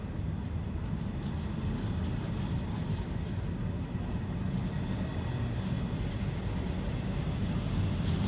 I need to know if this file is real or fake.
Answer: real